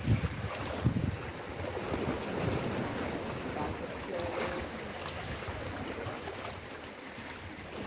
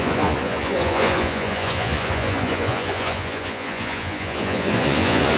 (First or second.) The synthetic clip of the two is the second